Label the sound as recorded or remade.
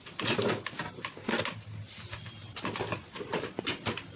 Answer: recorded